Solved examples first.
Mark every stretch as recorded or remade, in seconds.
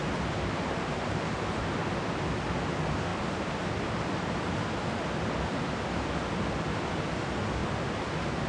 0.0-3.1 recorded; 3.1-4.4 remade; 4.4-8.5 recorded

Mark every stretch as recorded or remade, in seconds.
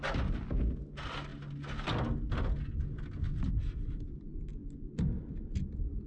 0.0-6.1 recorded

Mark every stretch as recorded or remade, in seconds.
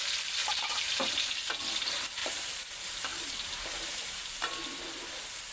0.0-0.4 recorded; 0.4-1.1 remade; 1.1-2.2 recorded; 2.2-2.7 remade; 2.7-3.1 recorded; 3.1-4.5 remade; 4.5-5.5 recorded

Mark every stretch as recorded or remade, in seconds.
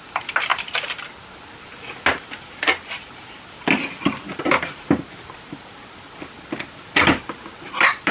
0.0-8.1 recorded